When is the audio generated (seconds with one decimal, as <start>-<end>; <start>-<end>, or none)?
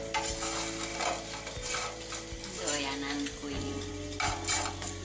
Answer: none